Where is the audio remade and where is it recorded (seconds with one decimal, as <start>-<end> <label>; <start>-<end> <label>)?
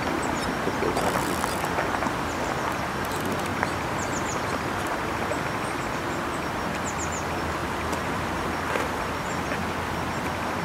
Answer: 0.0-3.5 recorded; 3.5-5.2 remade; 5.2-7.6 recorded; 7.6-9.1 remade; 9.1-10.6 recorded